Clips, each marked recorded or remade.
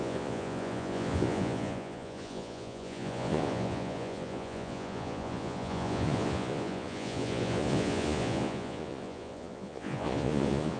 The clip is remade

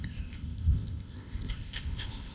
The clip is remade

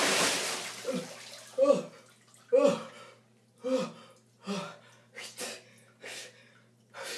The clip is recorded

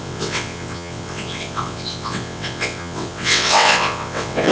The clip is remade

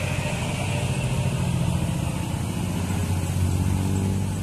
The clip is recorded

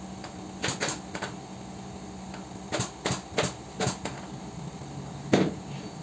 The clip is recorded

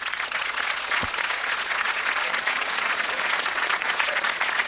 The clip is remade